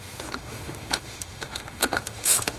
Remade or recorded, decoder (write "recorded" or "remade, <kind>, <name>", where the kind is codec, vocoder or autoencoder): remade, autoencoder, DAC-VAE